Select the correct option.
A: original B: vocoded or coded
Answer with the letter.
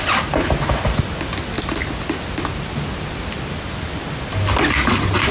A